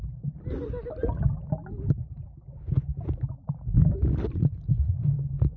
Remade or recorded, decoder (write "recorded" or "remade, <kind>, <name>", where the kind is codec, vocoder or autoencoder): recorded